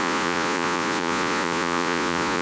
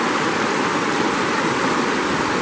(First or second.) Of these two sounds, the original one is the second